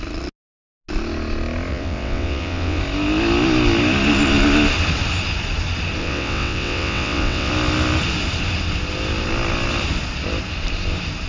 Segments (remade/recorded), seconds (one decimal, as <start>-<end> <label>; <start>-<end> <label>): 0.0-1.7 recorded; 1.7-2.8 remade; 2.8-6.0 recorded; 6.0-7.5 remade; 7.5-11.3 recorded